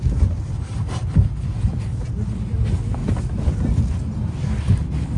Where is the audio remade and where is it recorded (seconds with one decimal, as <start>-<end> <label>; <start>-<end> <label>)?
0.0-3.0 recorded; 3.0-3.7 remade; 3.7-5.2 recorded